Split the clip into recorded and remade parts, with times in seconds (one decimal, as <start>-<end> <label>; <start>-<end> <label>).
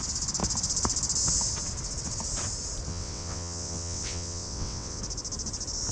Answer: 0.0-2.9 recorded; 2.9-5.0 remade; 5.0-5.9 recorded